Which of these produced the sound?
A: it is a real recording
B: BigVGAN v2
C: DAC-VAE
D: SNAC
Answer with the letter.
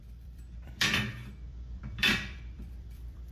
B